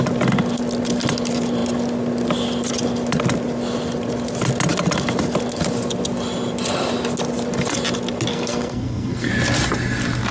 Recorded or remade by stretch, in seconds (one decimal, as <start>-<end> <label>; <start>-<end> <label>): 0.0-8.3 recorded; 8.3-9.3 remade; 9.3-10.3 recorded

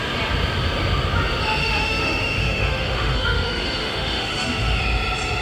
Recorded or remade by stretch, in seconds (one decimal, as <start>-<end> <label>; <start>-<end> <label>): 0.0-1.6 recorded; 1.6-4.8 remade; 4.8-5.4 recorded

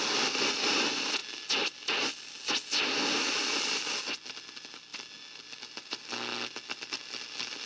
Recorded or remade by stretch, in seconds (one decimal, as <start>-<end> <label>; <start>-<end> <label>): 0.0-7.7 recorded

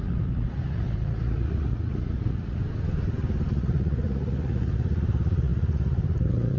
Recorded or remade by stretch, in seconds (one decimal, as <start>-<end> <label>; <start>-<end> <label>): 0.0-2.6 remade; 2.6-3.5 recorded; 3.5-6.6 remade

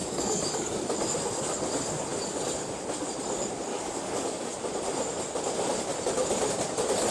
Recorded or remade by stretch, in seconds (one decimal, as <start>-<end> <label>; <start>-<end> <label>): 0.0-0.8 remade; 0.8-3.7 recorded; 3.7-4.5 remade; 4.5-7.1 recorded